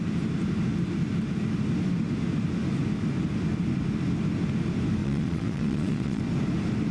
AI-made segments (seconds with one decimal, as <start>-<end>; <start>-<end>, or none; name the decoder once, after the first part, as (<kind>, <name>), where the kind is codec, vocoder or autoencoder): 5.0-6.2 (vocoder, Vocos)